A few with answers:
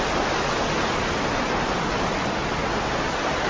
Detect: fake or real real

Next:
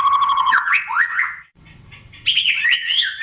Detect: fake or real fake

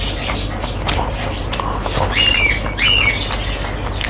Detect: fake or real real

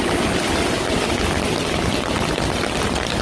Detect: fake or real real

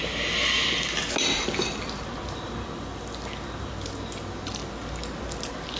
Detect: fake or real real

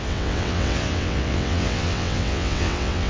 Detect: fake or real fake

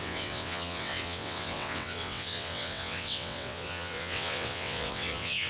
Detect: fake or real fake